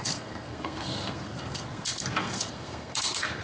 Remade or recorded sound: remade